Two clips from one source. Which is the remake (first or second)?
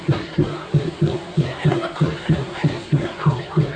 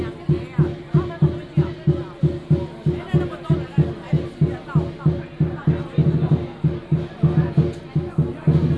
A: first